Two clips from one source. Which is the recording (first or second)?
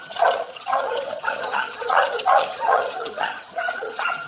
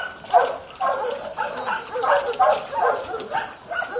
second